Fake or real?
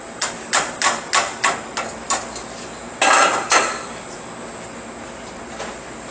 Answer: real